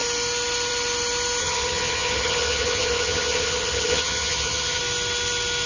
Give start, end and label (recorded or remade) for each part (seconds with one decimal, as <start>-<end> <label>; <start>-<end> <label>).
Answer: 0.0-1.4 recorded; 1.4-4.8 remade; 4.8-5.7 recorded